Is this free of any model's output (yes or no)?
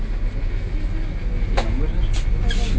yes